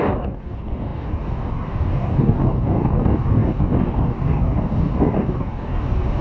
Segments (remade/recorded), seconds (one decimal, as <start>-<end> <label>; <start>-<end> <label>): 0.0-6.2 remade